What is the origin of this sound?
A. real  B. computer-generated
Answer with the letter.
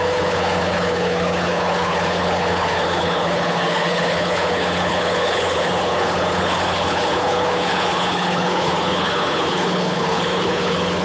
B